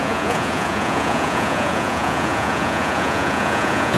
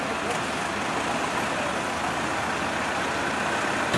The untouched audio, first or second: second